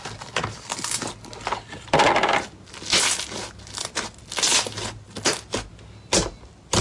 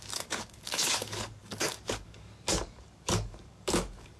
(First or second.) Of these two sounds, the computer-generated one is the second